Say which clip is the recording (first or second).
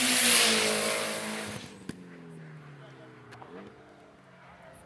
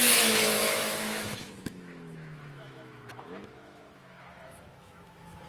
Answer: first